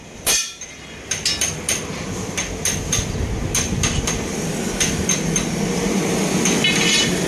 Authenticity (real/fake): real